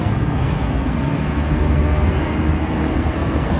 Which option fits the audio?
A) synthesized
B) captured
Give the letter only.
A